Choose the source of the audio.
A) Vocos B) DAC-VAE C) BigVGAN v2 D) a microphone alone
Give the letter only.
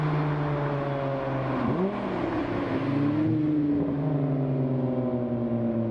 D